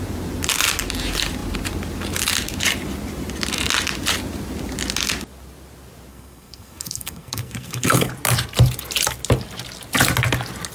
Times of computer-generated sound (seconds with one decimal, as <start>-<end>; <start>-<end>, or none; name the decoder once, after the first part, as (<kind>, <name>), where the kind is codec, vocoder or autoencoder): 6.1-8.1 (codec, SNAC)